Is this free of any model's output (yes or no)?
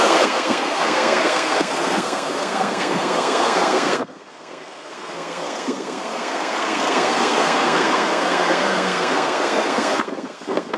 no